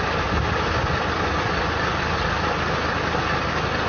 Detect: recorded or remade recorded